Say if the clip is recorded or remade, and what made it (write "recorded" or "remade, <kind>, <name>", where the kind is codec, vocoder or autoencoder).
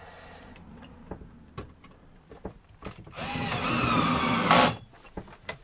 remade, vocoder, BigVGAN v2